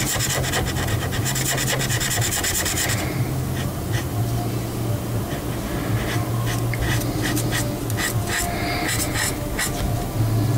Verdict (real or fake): real